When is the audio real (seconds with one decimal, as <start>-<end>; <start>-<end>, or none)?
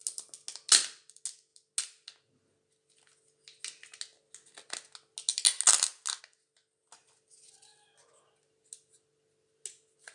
0.0-10.1